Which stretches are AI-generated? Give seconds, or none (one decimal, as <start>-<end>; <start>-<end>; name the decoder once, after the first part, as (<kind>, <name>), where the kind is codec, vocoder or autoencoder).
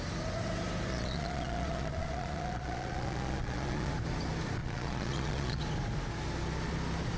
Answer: 0.9-3.9 (vocoder, Vocos); 4.6-5.6